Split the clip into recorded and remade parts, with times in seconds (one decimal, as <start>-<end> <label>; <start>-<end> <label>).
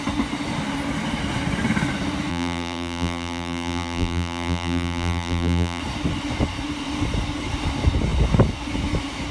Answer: 0.0-2.3 recorded; 2.3-5.8 remade; 5.8-9.3 recorded